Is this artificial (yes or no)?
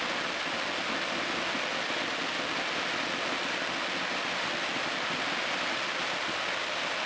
no